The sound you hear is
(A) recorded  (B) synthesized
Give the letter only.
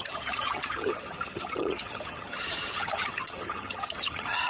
B